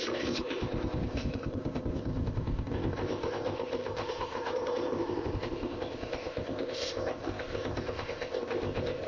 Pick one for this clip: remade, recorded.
remade